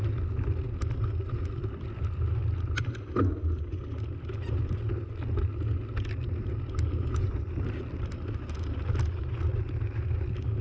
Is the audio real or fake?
real